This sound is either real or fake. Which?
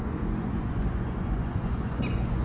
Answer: fake